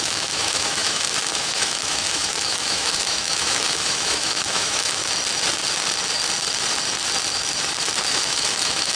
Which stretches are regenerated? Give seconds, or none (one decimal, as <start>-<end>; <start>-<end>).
0.0-5.0; 8.1-9.0